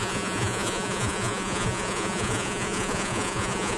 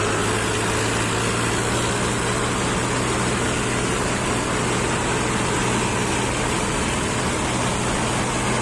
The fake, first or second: first